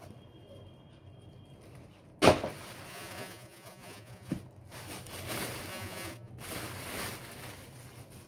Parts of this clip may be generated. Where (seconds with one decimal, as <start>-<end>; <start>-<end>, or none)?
2.9-4.3; 5.7-6.3